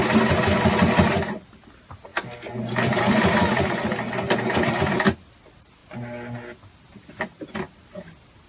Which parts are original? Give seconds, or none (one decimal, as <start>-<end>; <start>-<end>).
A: 0.0-8.5

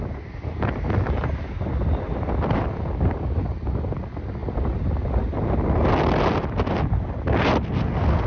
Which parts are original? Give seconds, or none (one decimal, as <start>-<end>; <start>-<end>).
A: 0.0-8.3

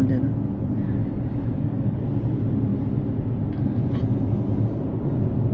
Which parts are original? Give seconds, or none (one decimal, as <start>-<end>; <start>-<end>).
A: 0.0-1.0; 2.0-5.5

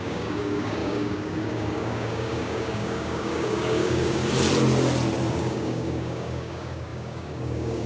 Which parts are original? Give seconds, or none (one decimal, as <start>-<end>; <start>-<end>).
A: 4.2-5.3

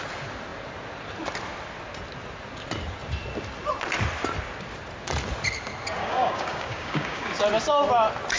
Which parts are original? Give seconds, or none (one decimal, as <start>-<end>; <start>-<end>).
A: 0.0-6.0; 7.3-8.4

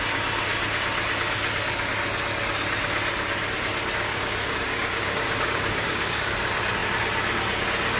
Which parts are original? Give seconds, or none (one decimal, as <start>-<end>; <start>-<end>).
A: 0.0-4.1; 6.3-8.0

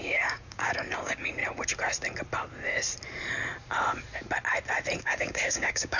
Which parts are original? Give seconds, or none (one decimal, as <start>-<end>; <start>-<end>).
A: 1.4-5.0

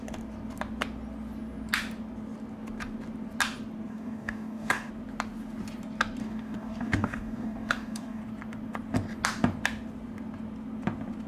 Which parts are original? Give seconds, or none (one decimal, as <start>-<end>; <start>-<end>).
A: 0.0-3.9; 4.9-6.2; 8.2-11.3